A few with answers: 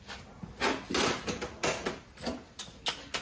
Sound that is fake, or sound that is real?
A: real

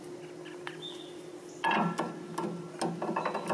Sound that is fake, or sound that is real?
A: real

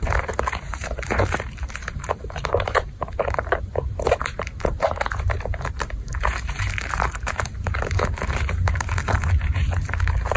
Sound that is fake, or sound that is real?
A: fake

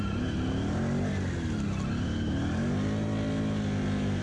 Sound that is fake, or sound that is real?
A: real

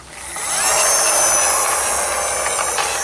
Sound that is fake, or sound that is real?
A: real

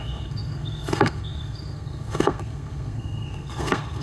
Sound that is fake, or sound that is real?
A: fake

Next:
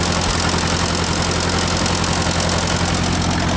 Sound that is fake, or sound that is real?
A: real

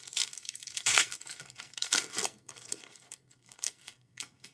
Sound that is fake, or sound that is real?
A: fake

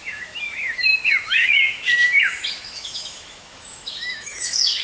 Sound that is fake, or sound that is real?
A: fake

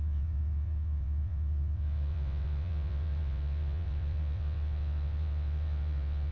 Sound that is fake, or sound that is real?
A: fake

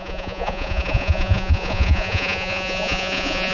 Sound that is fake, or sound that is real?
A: fake